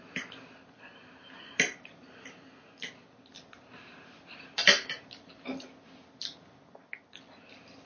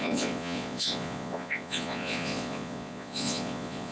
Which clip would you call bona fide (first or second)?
first